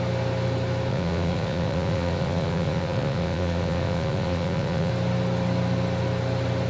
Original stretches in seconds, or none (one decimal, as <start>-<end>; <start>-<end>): 0.0-0.9; 4.9-6.7